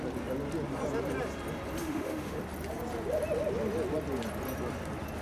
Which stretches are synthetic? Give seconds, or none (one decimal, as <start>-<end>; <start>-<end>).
1.8-2.4